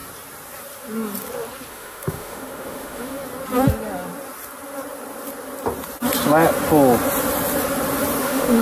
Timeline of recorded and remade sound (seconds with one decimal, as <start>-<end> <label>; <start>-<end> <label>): 0.0-1.7 recorded; 1.7-3.2 remade; 3.2-8.2 recorded; 8.2-8.6 remade